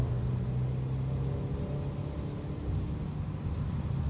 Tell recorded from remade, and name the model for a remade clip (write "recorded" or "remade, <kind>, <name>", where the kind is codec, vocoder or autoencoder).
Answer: recorded